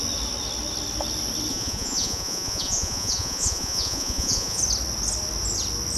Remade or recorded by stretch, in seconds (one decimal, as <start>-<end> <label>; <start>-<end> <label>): 0.0-1.5 recorded; 1.5-4.6 remade; 4.6-6.0 recorded

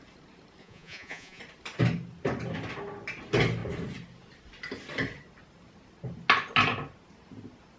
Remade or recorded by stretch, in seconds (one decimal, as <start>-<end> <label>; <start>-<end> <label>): 0.0-0.6 recorded; 0.6-1.4 remade; 1.4-7.8 recorded

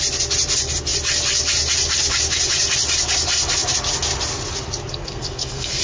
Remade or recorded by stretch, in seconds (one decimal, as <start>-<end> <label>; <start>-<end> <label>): 0.0-4.9 recorded; 4.9-5.8 remade